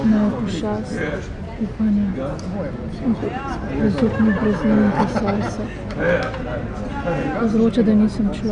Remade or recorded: recorded